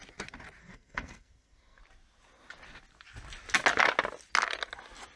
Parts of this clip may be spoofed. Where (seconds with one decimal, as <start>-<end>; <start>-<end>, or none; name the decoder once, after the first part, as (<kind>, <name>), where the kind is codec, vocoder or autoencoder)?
0.6-1.8 (codec, SNAC)